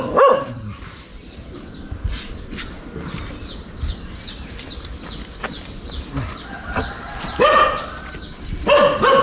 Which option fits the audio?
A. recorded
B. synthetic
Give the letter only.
A